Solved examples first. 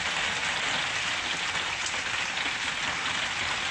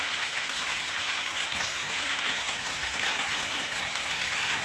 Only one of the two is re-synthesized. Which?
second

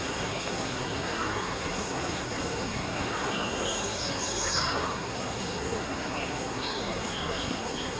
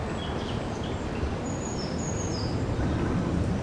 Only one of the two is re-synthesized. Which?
first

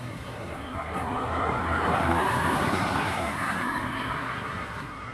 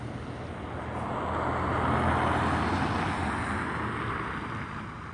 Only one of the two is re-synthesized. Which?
first